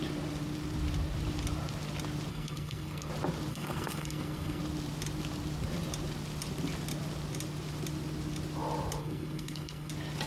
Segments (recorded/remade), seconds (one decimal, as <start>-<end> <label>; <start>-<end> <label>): 0.0-2.3 recorded; 2.3-3.1 remade; 3.1-3.5 recorded; 3.5-4.6 remade; 4.6-9.0 recorded; 9.0-9.9 remade; 9.9-10.3 recorded